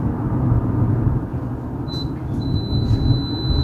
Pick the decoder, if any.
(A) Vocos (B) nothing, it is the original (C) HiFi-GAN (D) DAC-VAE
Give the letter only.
B